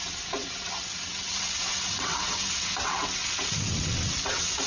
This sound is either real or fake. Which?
fake